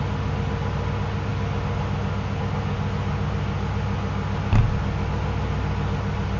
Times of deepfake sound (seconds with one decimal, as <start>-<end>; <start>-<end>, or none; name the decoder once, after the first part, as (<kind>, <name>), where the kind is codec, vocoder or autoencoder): none